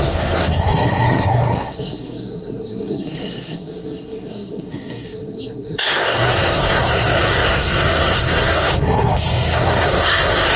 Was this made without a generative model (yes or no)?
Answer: no